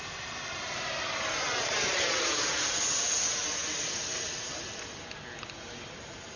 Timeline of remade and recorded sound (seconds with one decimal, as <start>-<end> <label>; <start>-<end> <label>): 0.0-3.6 recorded; 3.6-5.0 remade; 5.0-6.4 recorded